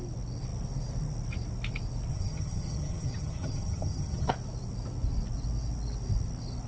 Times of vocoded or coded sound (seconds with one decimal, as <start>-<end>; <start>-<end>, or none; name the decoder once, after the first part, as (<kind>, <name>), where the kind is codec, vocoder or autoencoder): 2.1-4.3 (vocoder, HiFi-GAN)